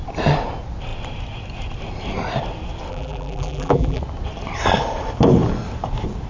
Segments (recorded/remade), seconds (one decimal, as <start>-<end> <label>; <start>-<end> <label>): 0.0-2.9 recorded; 2.9-4.0 remade; 4.0-6.3 recorded